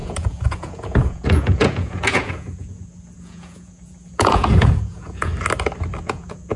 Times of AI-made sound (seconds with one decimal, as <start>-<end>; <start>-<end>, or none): 0.0-5.3; 6.0-6.6